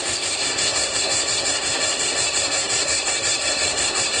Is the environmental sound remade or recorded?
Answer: remade